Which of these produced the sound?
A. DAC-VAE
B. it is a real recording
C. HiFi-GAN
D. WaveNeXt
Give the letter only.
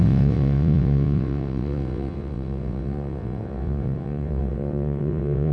D